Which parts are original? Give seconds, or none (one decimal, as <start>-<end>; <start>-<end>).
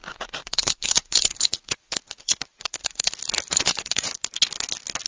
3.1-3.5; 4.1-5.1